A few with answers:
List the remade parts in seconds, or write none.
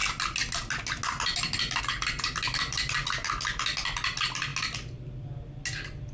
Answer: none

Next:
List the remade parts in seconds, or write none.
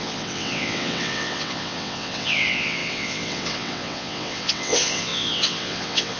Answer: 0.0-6.2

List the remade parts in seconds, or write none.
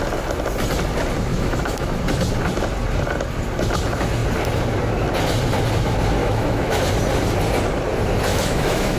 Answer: 1.3-2.0; 6.2-6.8; 8.3-9.0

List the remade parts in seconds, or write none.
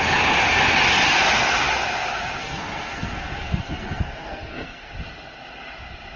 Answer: 2.4-4.9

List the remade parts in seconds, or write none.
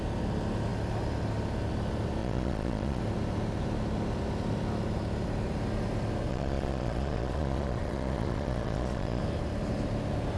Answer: 2.2-3.0; 6.3-9.2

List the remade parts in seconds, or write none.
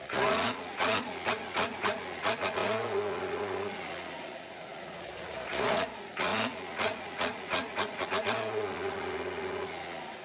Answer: 0.0-10.2